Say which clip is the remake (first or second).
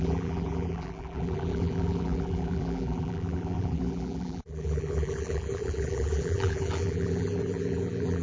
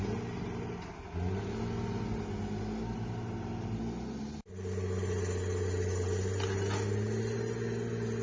first